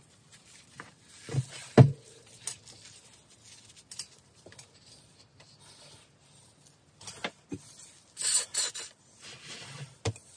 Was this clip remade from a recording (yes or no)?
no